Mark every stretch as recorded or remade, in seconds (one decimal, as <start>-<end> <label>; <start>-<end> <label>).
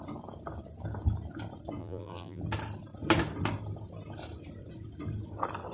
0.0-1.8 recorded; 1.8-2.4 remade; 2.4-5.7 recorded